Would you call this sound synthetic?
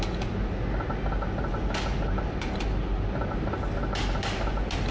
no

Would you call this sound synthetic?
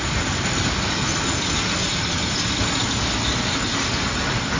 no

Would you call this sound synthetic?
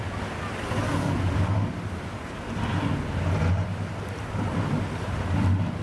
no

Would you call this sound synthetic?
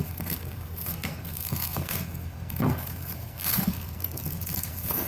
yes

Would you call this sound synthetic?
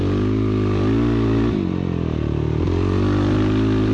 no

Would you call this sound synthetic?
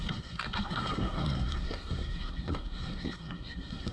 yes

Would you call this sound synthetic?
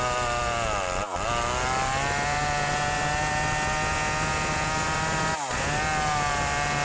no